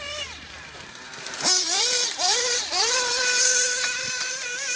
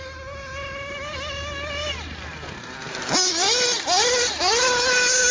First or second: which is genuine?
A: second